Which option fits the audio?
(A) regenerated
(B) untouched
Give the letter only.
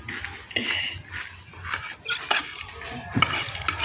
B